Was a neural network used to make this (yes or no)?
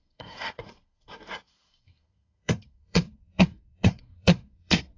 yes